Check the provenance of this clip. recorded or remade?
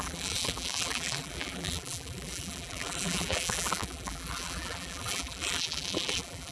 remade